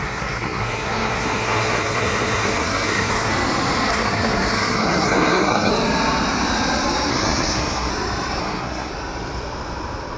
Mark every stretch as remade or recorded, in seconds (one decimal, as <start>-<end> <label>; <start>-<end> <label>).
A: 0.0-3.3 remade; 3.3-3.9 recorded; 3.9-5.7 remade; 5.7-7.1 recorded; 7.1-7.9 remade; 7.9-8.4 recorded; 8.4-8.9 remade; 8.9-10.2 recorded